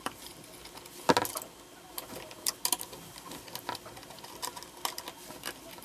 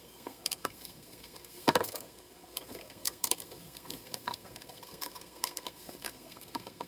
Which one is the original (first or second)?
first